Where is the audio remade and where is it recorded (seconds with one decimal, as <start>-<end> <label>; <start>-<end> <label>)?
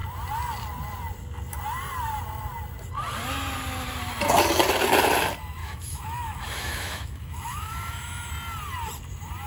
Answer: 0.0-5.6 recorded; 5.6-8.3 remade; 8.3-9.5 recorded